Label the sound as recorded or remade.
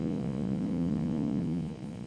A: remade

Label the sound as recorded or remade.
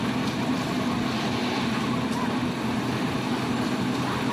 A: recorded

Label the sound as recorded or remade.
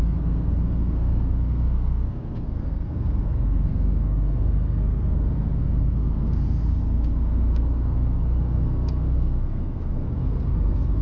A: remade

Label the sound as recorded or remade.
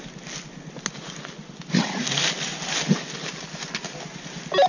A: recorded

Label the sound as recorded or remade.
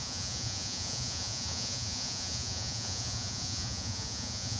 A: remade